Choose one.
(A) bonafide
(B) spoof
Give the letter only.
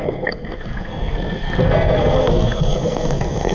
B